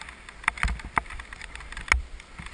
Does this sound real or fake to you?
real